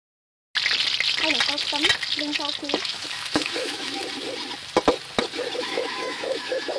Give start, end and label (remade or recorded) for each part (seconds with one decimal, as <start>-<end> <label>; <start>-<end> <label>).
0.0-2.8 recorded; 2.8-4.0 remade; 4.0-5.6 recorded; 5.6-6.8 remade